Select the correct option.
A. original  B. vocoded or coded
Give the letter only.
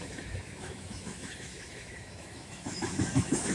B